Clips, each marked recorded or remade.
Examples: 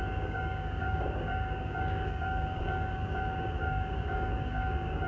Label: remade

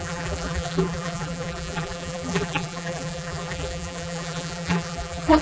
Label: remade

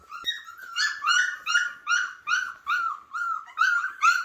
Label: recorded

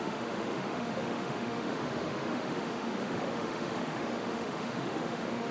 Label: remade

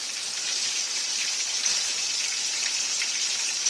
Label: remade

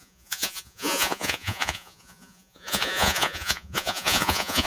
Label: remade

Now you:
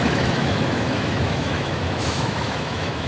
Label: remade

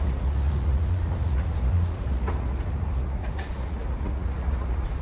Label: remade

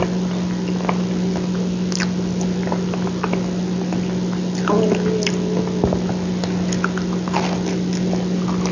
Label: recorded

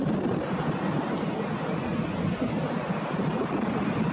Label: recorded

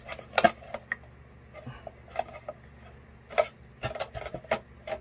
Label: recorded